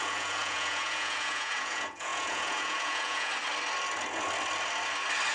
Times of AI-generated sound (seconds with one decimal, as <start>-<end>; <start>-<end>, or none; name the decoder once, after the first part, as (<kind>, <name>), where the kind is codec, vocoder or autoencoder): 0.0-3.3 (vocoder, Vocos)